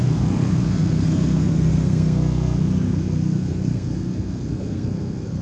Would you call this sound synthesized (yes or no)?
yes